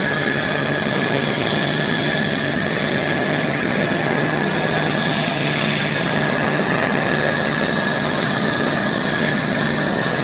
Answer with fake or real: fake